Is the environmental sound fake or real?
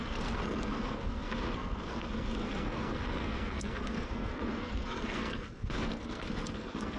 fake